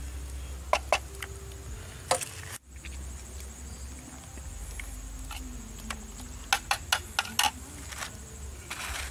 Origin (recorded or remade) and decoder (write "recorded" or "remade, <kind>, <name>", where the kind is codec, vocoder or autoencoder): recorded